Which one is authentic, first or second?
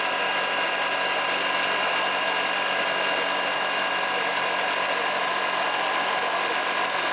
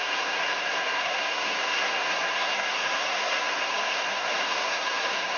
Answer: first